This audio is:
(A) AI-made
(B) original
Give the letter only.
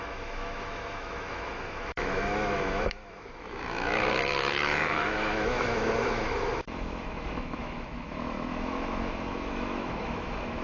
A